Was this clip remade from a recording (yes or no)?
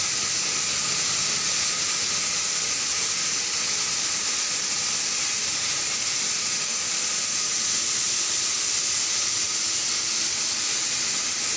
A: no